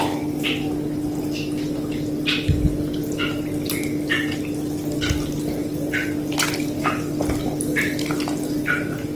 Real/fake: real